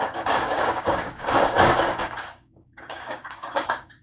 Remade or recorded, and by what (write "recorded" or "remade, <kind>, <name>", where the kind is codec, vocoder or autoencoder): remade, codec, DAC